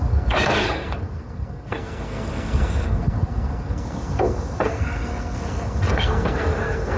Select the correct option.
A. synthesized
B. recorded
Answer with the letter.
A